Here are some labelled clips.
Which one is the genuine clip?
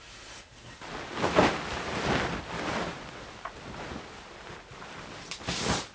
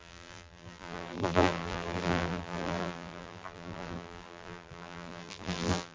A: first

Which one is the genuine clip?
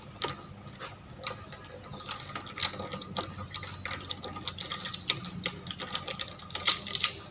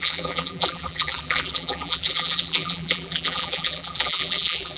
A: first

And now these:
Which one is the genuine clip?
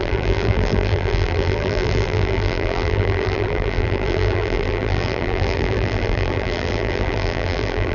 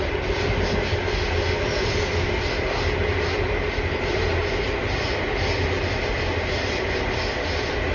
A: second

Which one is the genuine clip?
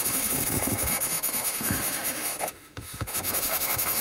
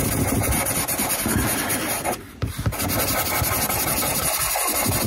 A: second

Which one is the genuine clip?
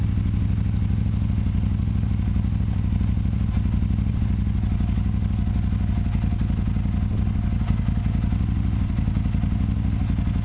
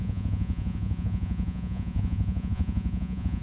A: first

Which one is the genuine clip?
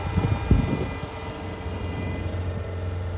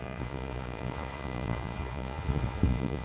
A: first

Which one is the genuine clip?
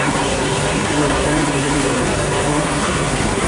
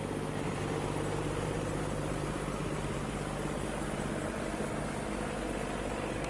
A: second